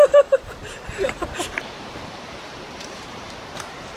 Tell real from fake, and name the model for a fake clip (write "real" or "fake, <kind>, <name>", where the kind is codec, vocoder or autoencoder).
fake, vocoder, BigVGAN v2